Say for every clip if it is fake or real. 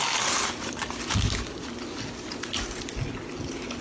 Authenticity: real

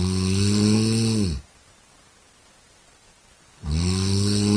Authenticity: real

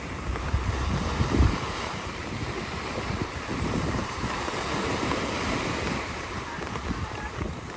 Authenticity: fake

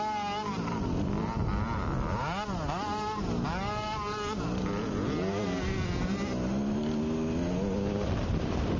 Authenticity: real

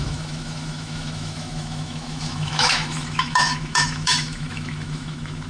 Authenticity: fake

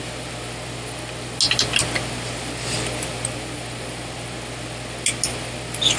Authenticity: real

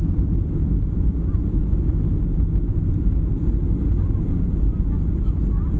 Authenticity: real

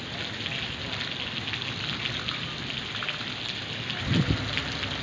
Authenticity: real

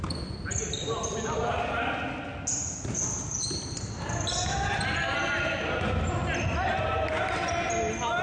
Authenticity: real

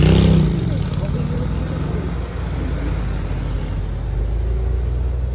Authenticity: real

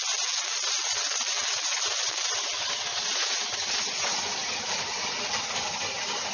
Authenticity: real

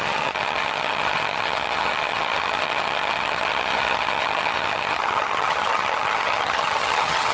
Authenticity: fake